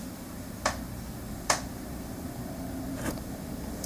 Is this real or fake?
fake